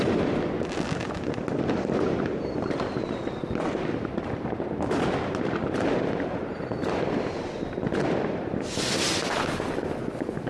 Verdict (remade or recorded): recorded